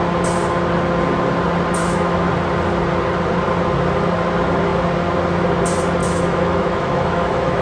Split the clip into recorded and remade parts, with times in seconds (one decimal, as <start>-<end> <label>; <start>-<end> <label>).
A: 0.0-1.8 recorded; 1.8-2.3 remade; 2.3-6.0 recorded; 6.0-7.6 remade